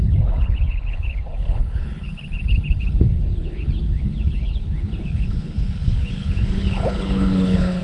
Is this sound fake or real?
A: fake